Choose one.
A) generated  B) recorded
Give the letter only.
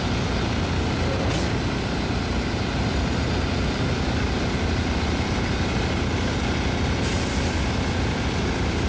B